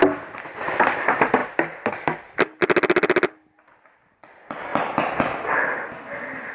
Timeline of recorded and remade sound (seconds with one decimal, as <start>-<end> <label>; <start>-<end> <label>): 0.0-6.5 recorded